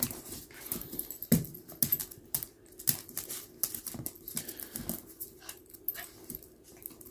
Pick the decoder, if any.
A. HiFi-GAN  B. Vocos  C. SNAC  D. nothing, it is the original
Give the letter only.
D